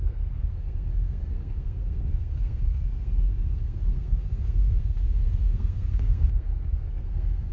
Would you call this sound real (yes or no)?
no